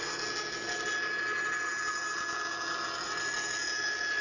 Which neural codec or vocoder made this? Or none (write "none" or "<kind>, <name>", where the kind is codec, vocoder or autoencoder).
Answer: none